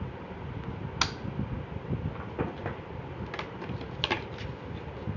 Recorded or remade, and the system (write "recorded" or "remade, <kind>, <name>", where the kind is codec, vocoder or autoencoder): recorded